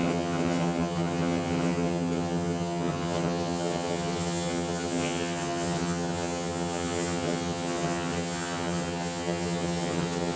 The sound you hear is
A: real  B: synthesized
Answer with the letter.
B